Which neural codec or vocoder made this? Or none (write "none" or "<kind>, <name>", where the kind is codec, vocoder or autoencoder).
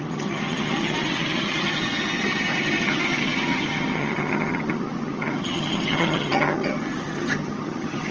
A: vocoder, HiFi-GAN